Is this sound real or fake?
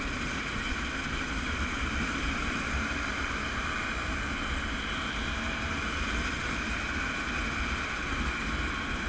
fake